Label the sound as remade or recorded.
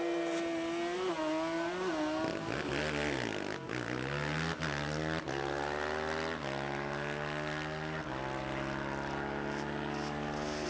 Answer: recorded